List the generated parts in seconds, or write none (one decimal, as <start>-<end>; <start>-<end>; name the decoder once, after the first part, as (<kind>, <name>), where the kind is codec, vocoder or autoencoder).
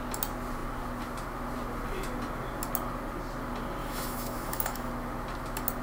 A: 3.8-4.9 (autoencoder, DAC-VAE)